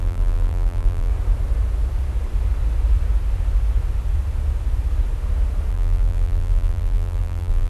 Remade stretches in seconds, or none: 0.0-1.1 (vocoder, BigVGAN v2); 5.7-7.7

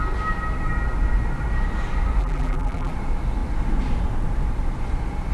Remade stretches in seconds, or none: 2.2-2.9 (vocoder, BigVGAN v2)

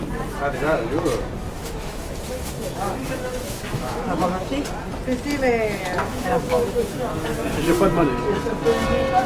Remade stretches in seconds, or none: 1.6-4.2 (autoencoder, DAC-VAE); 6.1-7.0

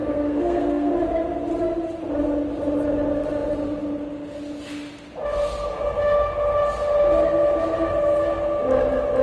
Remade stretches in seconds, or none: 0.0-0.9 (codec, SNAC)

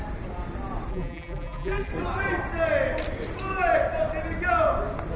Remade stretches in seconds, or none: 0.9-1.9 (vocoder, BigVGAN v2)